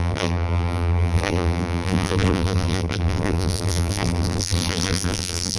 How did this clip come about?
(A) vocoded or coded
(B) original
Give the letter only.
A